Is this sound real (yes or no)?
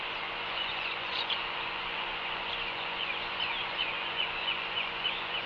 no